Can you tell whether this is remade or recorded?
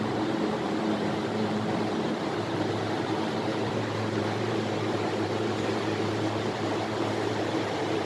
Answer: remade